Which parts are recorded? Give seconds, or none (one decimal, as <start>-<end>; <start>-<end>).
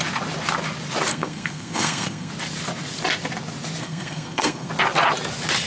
0.0-1.1; 2.3-3.8; 4.7-5.7